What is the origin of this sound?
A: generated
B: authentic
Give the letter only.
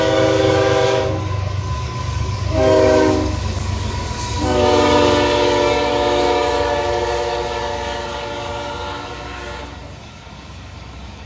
A